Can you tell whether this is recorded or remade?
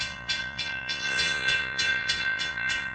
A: remade